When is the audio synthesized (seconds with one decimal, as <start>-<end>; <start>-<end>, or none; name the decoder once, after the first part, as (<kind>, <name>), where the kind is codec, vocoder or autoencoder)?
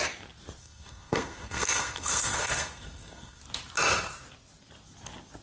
0.6-3.4 (codec, SNAC)